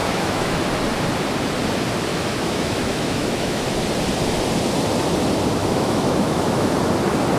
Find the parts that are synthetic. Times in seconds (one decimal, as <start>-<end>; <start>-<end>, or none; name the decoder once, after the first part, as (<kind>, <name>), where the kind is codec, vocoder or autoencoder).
0.0-0.6 (autoencoder, DAC-VAE); 2.1-3.7; 5.6-6.7